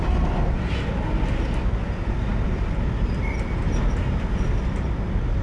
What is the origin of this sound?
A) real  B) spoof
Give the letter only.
A